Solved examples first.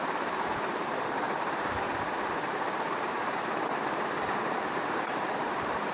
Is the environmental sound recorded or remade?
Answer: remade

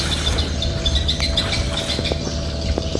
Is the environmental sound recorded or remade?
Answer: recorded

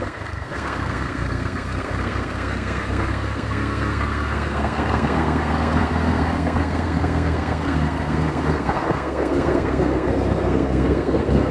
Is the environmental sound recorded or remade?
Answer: remade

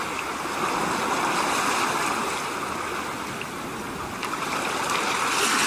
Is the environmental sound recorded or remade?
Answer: recorded